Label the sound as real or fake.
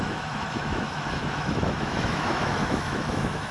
fake